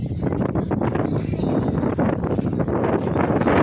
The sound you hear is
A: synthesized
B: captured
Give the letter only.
B